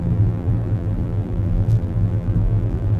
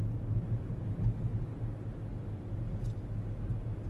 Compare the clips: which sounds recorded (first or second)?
second